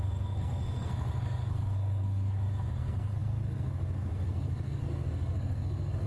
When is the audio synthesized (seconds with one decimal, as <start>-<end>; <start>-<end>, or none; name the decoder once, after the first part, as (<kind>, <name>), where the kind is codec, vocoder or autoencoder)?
0.0-6.1 (codec, SNAC)